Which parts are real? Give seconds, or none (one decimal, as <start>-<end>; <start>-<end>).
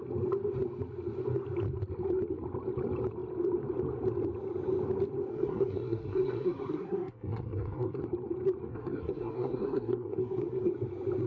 0.0-5.3; 8.0-8.7; 10.7-11.3